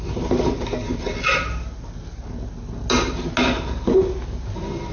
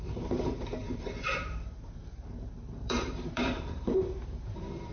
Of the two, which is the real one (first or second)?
first